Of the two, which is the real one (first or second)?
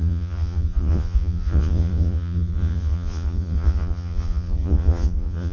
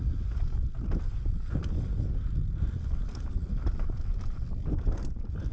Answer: second